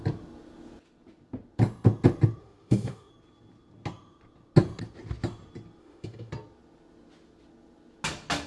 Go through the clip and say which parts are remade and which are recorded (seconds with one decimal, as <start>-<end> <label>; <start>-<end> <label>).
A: 0.0-2.4 recorded; 2.4-3.1 remade; 3.1-5.8 recorded; 5.8-6.3 remade; 6.3-8.5 recorded

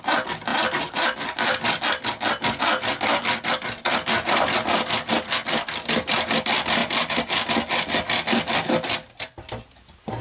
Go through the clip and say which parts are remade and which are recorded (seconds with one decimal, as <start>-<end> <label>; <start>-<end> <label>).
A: 0.0-10.2 recorded

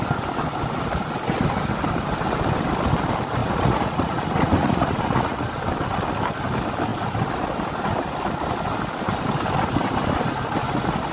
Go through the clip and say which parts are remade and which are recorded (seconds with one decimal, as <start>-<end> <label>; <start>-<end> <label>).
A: 0.0-3.4 recorded; 3.4-5.5 remade; 5.5-11.1 recorded

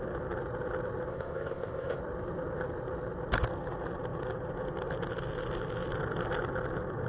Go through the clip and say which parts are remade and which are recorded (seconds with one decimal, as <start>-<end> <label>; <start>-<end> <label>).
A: 0.0-1.1 recorded; 1.1-2.0 remade; 2.0-7.1 recorded

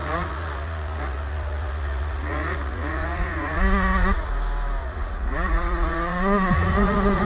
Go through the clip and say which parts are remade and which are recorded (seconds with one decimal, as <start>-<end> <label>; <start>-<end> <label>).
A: 0.0-4.3 remade; 4.3-4.8 recorded; 4.8-7.2 remade

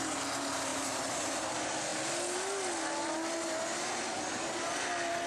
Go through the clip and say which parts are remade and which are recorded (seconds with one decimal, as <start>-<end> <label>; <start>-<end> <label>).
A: 0.0-0.7 recorded; 0.7-1.5 remade; 1.5-5.3 recorded

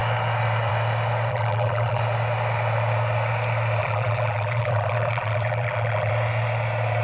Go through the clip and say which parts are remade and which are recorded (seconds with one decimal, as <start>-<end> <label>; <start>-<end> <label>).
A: 0.0-1.3 recorded; 1.3-2.0 remade; 2.0-3.8 recorded; 3.8-6.1 remade; 6.1-7.0 recorded